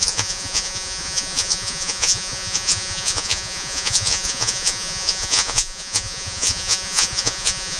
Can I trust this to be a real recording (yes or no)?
no